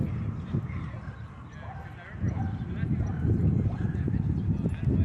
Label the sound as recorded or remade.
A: recorded